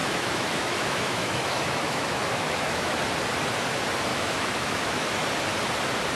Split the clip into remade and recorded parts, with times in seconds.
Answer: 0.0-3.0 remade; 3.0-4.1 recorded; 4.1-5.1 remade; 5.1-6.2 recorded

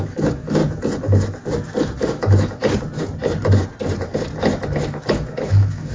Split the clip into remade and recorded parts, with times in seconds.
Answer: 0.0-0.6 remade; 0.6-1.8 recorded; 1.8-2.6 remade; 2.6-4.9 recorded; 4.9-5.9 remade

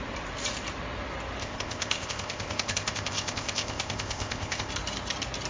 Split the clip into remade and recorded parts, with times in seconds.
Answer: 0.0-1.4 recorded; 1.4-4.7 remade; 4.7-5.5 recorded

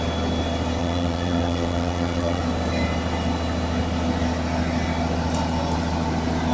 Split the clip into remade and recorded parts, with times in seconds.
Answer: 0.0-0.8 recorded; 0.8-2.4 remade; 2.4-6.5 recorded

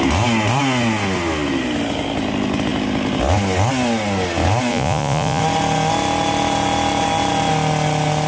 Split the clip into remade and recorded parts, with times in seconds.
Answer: 0.0-4.7 recorded; 4.7-5.4 remade; 5.4-8.3 recorded